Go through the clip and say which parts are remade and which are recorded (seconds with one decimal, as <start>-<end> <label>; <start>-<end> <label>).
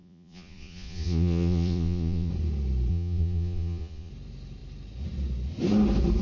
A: 0.0-2.3 remade; 2.3-2.9 recorded; 2.9-4.1 remade; 4.1-6.2 recorded